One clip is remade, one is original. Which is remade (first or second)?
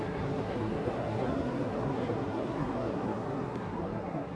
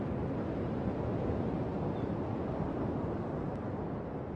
first